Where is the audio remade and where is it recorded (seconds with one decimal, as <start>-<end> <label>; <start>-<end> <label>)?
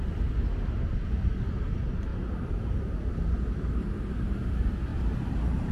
0.0-2.1 recorded; 2.1-3.1 remade; 3.1-4.9 recorded; 4.9-5.7 remade